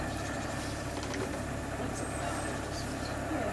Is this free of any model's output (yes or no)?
yes